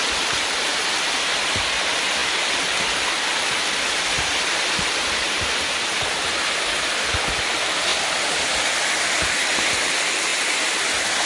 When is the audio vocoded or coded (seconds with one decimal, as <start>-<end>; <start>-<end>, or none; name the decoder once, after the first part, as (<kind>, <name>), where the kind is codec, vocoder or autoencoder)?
none